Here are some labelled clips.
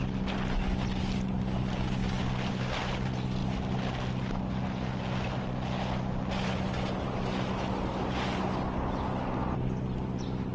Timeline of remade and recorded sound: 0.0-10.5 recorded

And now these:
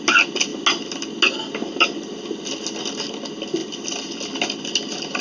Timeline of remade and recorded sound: 0.0-5.2 recorded

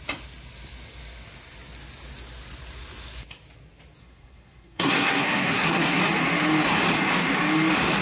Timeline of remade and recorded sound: 0.0-4.0 recorded; 4.0-6.0 remade; 6.0-8.0 recorded

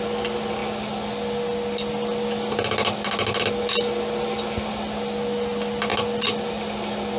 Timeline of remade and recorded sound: 0.0-7.2 recorded

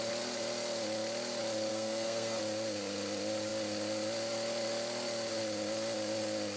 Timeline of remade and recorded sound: 0.0-1.7 recorded; 1.7-2.4 remade; 2.4-6.6 recorded